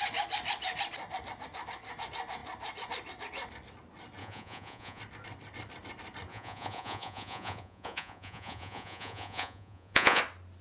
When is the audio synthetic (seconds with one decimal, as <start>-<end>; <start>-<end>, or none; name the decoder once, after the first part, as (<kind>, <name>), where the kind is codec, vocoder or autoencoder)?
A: 4.2-5.0 (vocoder, Vocos); 6.3-10.2